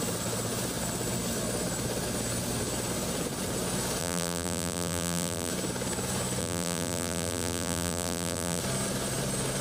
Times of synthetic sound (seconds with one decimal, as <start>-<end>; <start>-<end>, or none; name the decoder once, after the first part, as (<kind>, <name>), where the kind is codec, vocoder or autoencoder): 4.0-5.5 (vocoder, BigVGAN v2); 6.4-8.6